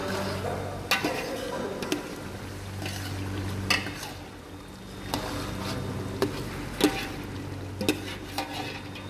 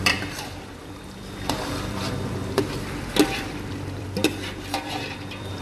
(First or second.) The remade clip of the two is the second